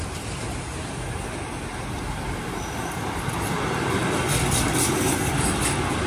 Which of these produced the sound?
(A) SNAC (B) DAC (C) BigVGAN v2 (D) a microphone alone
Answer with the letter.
D